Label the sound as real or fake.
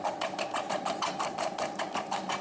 fake